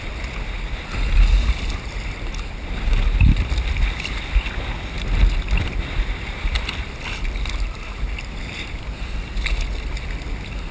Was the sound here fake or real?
real